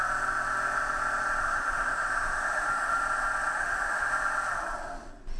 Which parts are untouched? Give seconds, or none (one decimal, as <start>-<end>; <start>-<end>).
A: 0.0-1.4; 3.0-3.5; 4.1-5.4